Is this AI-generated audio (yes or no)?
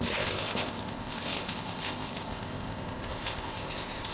yes